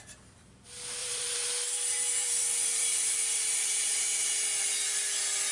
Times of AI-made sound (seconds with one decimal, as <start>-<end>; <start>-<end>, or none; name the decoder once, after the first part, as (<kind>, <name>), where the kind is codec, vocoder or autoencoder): 1.0-4.3 (vocoder, BigVGAN v2)